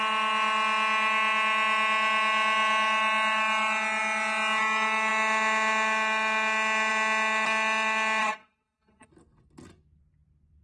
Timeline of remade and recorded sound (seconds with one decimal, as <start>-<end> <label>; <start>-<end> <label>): 0.0-8.2 recorded; 8.2-9.1 remade; 9.1-10.6 recorded